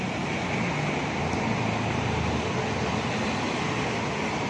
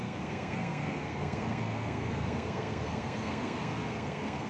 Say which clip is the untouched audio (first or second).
first